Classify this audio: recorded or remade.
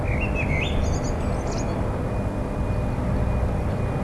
recorded